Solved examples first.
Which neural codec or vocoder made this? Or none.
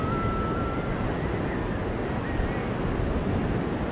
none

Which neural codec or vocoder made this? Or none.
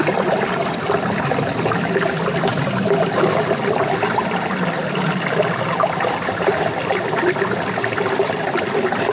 none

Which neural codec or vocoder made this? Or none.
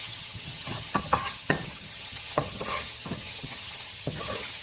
vocoder, HiFi-GAN